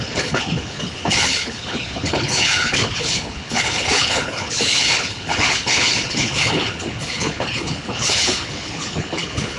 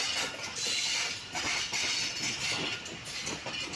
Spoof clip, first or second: first